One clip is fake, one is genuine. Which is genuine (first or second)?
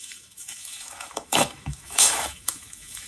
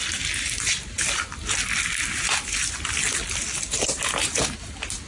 second